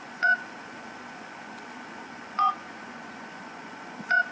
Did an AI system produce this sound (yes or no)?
yes